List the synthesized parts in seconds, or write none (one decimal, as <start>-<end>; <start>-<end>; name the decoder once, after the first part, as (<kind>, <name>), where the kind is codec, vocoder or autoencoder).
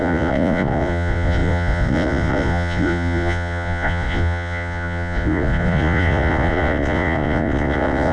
0.0-8.1 (vocoder, Vocos)